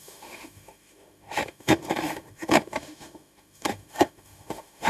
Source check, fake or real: fake